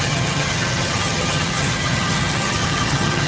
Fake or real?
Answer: fake